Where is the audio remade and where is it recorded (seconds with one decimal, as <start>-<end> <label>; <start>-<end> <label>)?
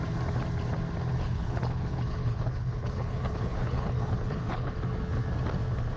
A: 0.0-1.1 recorded; 1.1-4.7 remade; 4.7-6.0 recorded